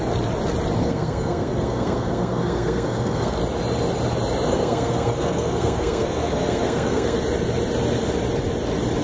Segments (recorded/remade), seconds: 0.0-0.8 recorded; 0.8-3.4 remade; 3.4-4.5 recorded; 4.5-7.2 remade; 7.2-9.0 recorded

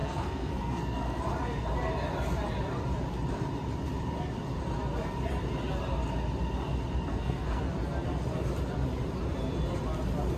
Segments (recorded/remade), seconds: 0.0-1.2 remade; 1.2-7.1 recorded; 7.1-7.6 remade; 7.6-10.4 recorded

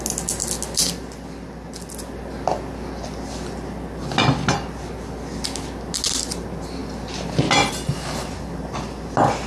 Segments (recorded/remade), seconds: 0.0-9.5 recorded

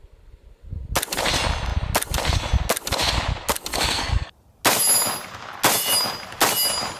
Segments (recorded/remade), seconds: 0.0-3.7 recorded; 3.7-4.3 remade; 4.3-7.0 recorded

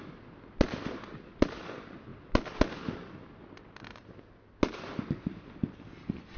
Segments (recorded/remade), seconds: 0.0-6.4 recorded

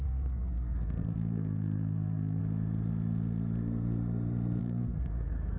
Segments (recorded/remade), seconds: 0.0-2.4 remade; 2.4-4.6 recorded; 4.6-5.6 remade

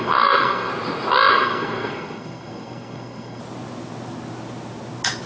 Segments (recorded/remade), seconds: 0.0-0.7 remade; 0.7-1.3 recorded; 1.3-3.4 remade; 3.4-5.3 recorded